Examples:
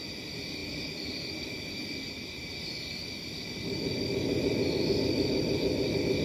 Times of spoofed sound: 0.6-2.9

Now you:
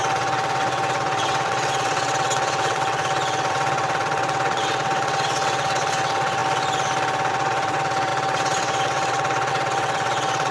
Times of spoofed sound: 0.0-3.0; 3.5-6.4; 7.3-10.5

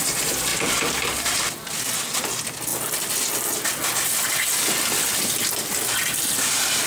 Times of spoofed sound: 0.5-1.8

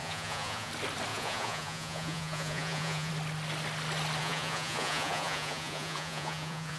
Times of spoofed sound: 0.0-0.7; 1.1-3.1; 4.2-6.8

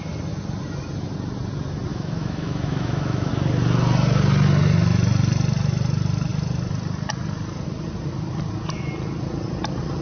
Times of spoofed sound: 1.9-3.3

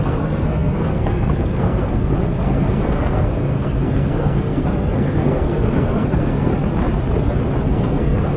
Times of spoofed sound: 0.0-6.5; 7.7-8.4

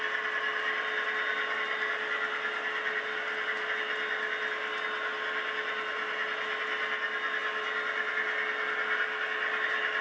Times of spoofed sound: none

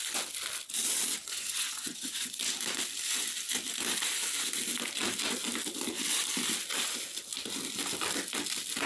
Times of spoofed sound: 1.2-2.4